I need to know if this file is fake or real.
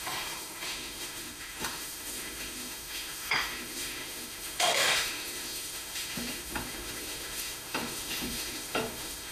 fake